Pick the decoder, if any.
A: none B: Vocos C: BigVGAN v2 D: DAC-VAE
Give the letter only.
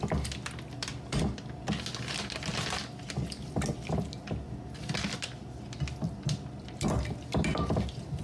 A